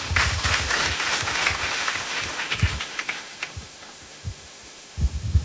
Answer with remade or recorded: remade